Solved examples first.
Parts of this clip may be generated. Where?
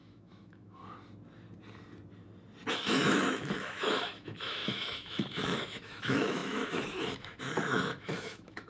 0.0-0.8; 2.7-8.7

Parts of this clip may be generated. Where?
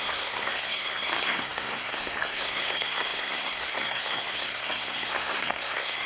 0.0-6.1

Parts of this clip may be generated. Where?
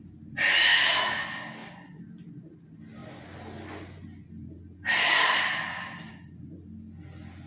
0.7-1.2